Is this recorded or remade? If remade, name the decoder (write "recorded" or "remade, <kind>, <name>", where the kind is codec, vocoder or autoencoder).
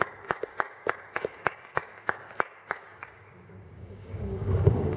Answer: remade, codec, DAC